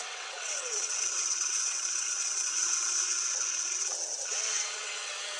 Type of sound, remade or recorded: remade